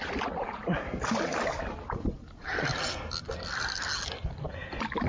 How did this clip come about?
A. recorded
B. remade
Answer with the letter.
A